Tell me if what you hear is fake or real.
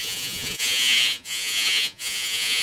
fake